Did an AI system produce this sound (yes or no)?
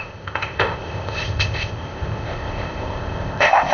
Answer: yes